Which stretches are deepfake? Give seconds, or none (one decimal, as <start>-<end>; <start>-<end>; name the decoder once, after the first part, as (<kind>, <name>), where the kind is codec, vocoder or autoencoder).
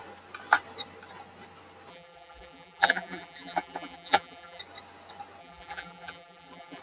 1.9-4.6 (vocoder, BigVGAN v2); 5.4-6.8